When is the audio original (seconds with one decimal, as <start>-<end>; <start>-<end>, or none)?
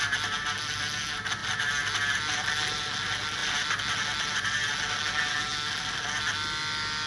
0.0-7.1